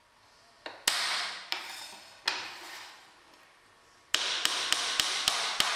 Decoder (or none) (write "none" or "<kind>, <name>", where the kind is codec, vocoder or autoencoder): none